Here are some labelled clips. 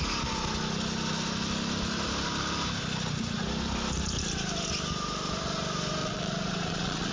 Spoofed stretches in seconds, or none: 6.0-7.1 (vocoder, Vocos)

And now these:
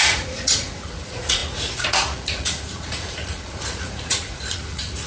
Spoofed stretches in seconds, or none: 0.0-5.1 (vocoder, Vocos)

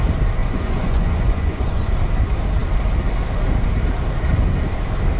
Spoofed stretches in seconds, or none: 0.4-1.9 (vocoder, Vocos)

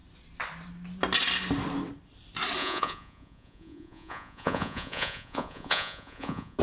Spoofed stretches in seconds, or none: 2.6-6.6 (vocoder, Vocos)

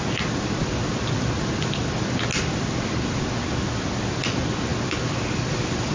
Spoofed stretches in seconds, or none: none

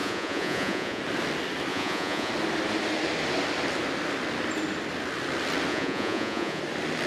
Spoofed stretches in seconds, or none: 0.0-1.0 (vocoder, Vocos); 1.7-2.3; 5.7-6.6

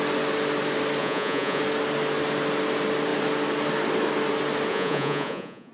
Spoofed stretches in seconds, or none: 1.0-1.6 (vocoder, Vocos); 4.7-5.7